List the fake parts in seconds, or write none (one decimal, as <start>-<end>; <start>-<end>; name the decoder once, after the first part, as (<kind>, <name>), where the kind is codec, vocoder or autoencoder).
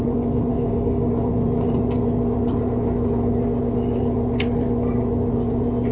0.5-1.1 (codec, DAC)